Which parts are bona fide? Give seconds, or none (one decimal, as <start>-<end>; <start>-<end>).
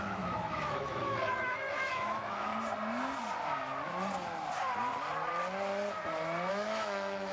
2.5-6.5